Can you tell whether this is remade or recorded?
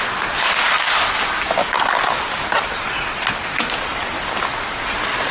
recorded